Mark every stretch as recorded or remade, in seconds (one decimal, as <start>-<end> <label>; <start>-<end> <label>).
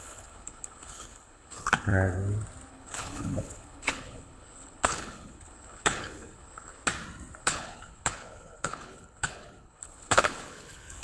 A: 0.0-1.9 remade; 1.9-2.7 recorded; 2.7-6.8 remade; 6.8-7.4 recorded; 7.4-11.0 remade